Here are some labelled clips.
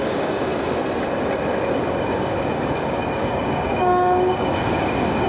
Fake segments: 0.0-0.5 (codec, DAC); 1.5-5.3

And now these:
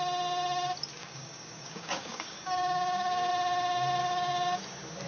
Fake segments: 1.0-3.3 (codec, DAC); 4.0-4.6

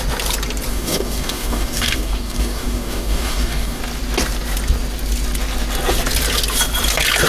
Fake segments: 0.7-3.8 (codec, DAC)

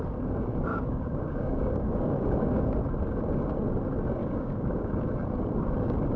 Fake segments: 0.7-2.7 (codec, DAC); 4.2-4.9

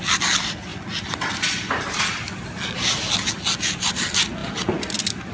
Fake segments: none